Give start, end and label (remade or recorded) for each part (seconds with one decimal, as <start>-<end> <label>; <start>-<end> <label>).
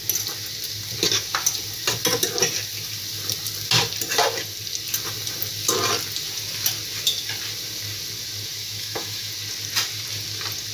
0.0-8.6 recorded; 8.6-9.3 remade; 9.3-10.7 recorded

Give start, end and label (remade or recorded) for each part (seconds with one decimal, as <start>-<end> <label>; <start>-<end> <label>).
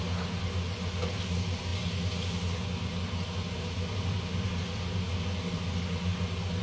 0.0-6.6 recorded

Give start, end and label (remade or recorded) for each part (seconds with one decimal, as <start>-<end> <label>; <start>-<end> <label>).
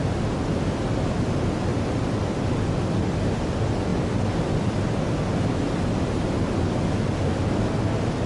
0.0-8.3 recorded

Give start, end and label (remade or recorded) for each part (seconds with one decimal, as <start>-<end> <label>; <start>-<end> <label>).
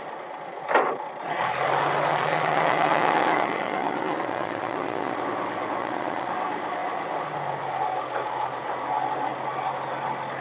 0.0-2.1 recorded; 2.1-5.2 remade; 5.2-5.8 recorded; 5.8-6.3 remade; 6.3-10.4 recorded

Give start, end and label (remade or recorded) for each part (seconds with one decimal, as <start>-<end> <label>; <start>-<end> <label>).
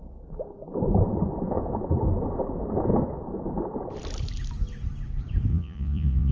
0.0-5.5 recorded; 5.5-6.3 remade